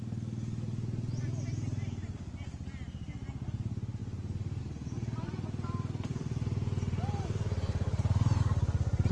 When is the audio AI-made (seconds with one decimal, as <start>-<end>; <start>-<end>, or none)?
6.1-8.4